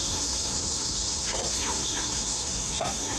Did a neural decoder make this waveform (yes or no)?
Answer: yes